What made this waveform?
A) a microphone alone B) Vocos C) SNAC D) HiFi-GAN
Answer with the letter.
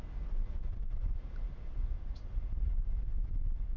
A